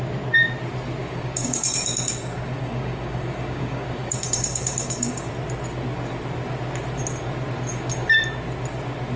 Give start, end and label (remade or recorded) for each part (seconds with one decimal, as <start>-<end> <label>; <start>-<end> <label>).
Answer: 0.0-1.0 recorded; 1.0-5.3 remade; 5.3-9.2 recorded